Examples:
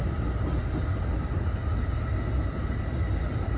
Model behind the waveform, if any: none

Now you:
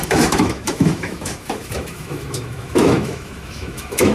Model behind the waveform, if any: autoencoder, DAC-VAE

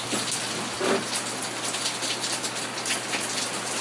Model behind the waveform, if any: none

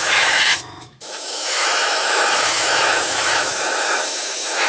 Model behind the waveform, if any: autoencoder, DAC-VAE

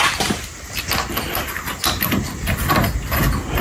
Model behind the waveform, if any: none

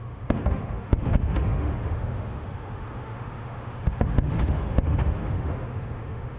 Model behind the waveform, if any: autoencoder, DAC-VAE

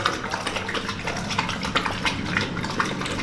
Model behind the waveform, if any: none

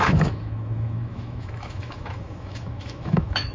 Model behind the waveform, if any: autoencoder, DAC-VAE